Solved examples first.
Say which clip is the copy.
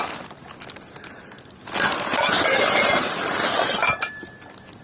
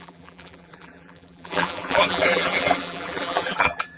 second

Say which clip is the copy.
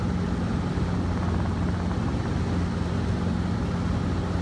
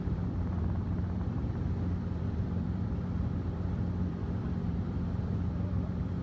second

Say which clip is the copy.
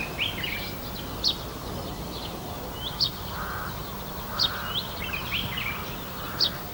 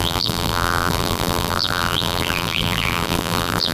second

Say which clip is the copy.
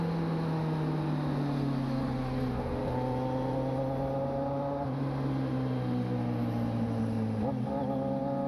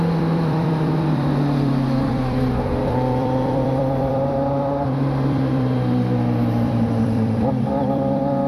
second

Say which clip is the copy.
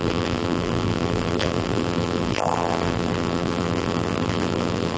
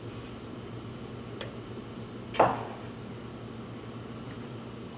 first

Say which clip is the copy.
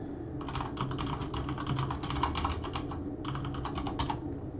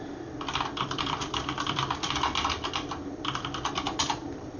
second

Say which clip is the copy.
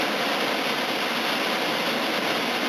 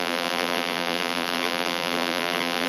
second